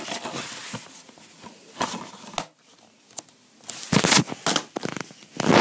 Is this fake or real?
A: real